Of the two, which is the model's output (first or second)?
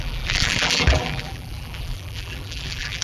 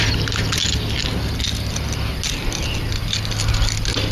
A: first